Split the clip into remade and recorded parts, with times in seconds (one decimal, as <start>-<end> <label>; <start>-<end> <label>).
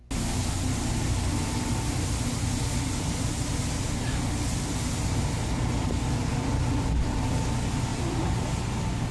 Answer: 0.0-7.9 recorded; 7.9-8.4 remade; 8.4-9.1 recorded